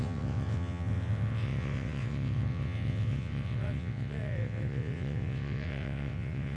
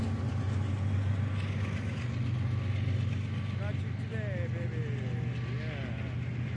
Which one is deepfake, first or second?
first